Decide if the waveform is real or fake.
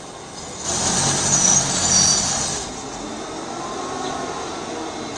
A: real